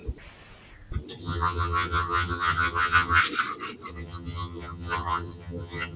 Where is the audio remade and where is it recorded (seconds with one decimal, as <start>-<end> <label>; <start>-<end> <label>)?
0.0-1.2 recorded; 1.2-3.2 remade; 3.2-3.9 recorded; 3.9-6.0 remade

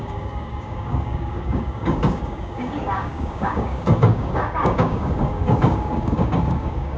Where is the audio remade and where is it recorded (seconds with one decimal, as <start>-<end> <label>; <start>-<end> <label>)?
0.0-7.0 remade

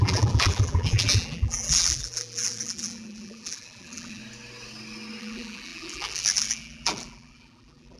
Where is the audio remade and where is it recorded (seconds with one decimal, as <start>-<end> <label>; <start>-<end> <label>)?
0.0-4.2 remade; 4.2-5.2 recorded; 5.2-8.0 remade

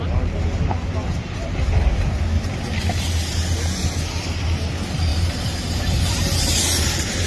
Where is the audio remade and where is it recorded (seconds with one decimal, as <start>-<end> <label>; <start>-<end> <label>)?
0.0-7.3 recorded

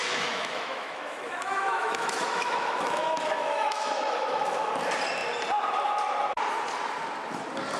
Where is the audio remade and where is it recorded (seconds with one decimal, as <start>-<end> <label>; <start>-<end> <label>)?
0.0-4.7 remade; 4.7-7.8 recorded